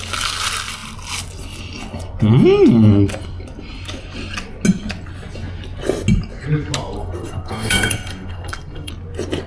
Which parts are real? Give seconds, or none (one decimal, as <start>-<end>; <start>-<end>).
0.0-7.0; 8.9-9.5